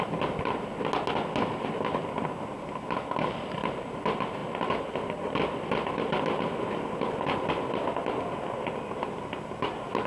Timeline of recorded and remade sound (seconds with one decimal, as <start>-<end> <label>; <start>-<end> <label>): 0.0-10.1 recorded